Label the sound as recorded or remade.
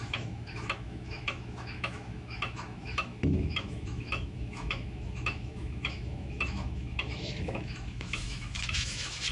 remade